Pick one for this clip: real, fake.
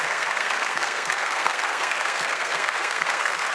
fake